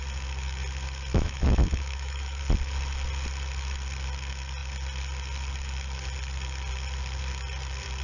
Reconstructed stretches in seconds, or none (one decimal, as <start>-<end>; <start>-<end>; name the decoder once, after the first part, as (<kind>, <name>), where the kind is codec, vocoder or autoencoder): 1.1-2.4 (autoencoder, DAC-VAE)